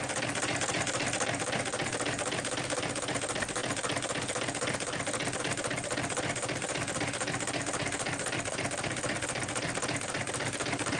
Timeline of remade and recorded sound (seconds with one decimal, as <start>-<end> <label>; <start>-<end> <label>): 0.0-11.0 recorded